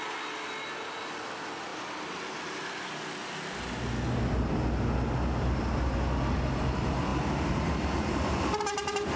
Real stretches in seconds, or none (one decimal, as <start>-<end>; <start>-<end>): 0.0-7.1; 8.4-9.2